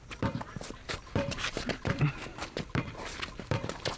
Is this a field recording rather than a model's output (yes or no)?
no